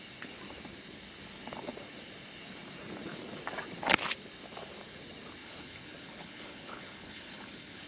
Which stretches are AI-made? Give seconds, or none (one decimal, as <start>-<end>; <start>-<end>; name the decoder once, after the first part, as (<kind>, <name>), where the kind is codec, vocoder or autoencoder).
5.4-7.9 (codec, HILCodec)